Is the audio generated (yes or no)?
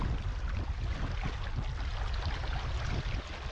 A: no